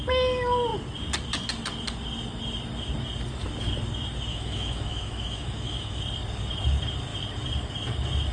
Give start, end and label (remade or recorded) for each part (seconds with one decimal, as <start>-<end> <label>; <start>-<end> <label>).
0.0-4.3 recorded; 4.3-6.0 remade; 6.0-8.3 recorded